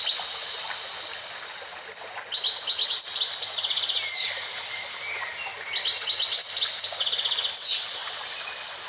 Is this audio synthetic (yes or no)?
no